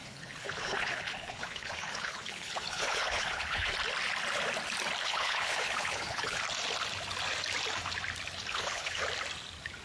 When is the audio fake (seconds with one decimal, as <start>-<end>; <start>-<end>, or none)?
0.0-3.7; 5.0-6.4; 8.5-9.0